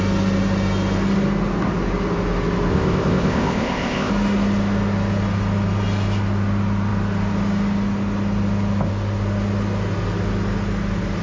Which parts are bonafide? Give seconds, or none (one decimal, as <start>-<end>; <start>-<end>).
0.0-2.7; 4.1-11.2